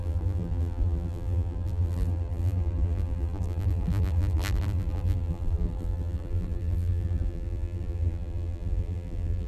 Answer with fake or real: fake